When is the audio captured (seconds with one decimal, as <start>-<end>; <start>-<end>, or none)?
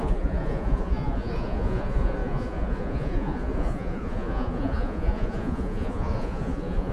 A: none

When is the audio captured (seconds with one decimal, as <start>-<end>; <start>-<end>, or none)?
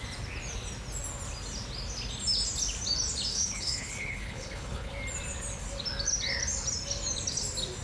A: 0.0-3.3; 4.9-7.8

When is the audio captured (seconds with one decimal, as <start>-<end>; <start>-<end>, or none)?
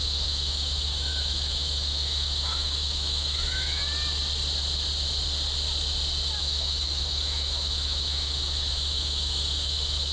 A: 3.8-6.4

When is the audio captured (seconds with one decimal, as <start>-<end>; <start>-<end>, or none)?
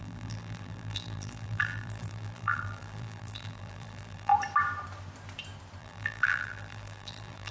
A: 4.3-5.8